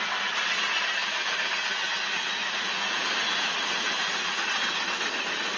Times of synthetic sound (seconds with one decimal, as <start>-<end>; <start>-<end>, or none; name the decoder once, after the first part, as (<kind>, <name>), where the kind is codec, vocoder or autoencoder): 1.0-4.4 (vocoder, BigVGAN v2)